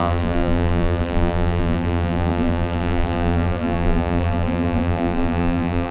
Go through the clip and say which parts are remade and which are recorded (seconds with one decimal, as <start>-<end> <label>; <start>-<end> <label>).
0.0-5.9 remade